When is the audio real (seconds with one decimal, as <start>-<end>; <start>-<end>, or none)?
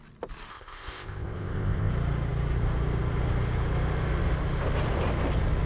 0.0-0.5; 1.9-5.7